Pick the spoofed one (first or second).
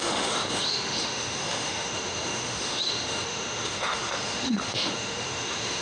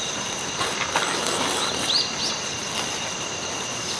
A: first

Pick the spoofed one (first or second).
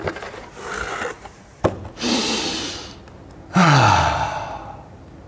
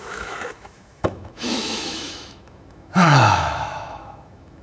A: second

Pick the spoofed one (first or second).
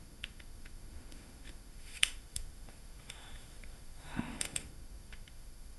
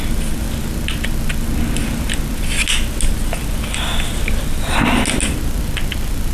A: first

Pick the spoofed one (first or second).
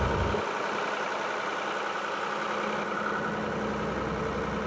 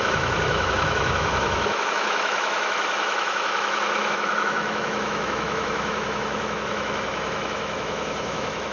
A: second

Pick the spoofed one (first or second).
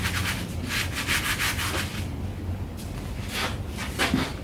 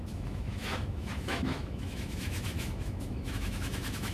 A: second